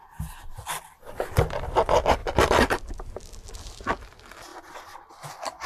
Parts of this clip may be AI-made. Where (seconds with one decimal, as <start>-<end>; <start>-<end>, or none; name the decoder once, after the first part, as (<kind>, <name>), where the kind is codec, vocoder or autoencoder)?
none